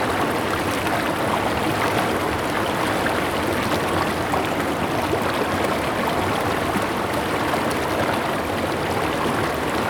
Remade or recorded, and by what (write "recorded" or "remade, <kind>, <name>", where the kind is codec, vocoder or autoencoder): recorded